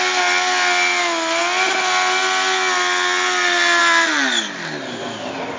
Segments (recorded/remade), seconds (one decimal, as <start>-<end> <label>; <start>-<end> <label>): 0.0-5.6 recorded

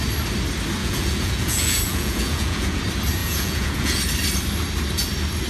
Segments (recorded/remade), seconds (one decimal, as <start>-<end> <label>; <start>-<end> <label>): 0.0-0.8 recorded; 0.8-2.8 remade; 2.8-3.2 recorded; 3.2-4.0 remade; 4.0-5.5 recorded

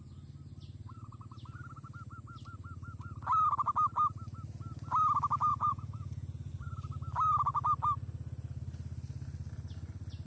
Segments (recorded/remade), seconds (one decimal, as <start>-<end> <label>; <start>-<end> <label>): 0.0-5.5 recorded; 5.5-6.5 remade; 6.5-10.3 recorded

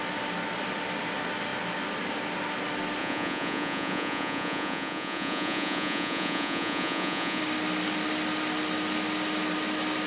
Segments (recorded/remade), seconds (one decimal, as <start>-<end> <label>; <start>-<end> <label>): 0.0-3.0 recorded; 3.0-7.4 remade; 7.4-10.1 recorded